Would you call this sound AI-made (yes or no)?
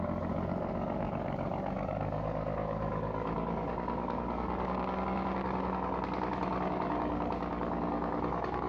yes